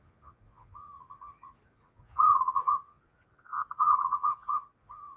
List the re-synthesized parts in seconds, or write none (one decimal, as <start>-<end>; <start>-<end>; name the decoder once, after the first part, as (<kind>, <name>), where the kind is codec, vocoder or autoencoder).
0.0-5.2 (vocoder, Vocos)